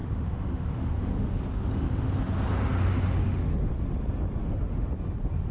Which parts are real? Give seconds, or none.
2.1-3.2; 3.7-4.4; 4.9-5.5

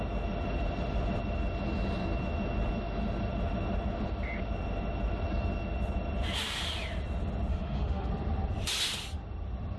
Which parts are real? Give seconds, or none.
0.0-7.5; 8.1-9.8

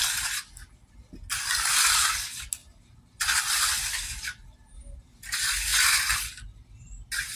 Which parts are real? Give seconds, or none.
0.0-7.4

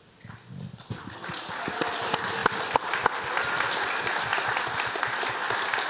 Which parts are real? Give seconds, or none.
0.0-5.9

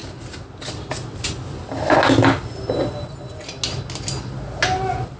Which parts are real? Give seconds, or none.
0.0-5.2

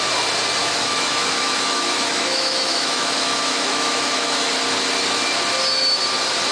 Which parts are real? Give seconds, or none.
0.0-0.6; 4.5-6.5

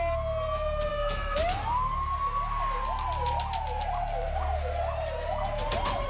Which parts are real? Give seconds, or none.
0.0-0.9; 1.4-6.1